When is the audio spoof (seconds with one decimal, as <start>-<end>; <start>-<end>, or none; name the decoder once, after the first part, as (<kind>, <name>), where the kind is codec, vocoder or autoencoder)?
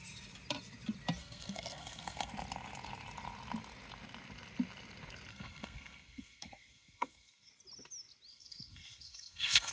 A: 1.2-2.3 (codec, SNAC); 5.3-7.5; 8.3-9.7